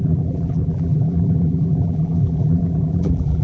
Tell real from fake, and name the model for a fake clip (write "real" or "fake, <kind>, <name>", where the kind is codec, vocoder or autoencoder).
fake, vocoder, BigVGAN v2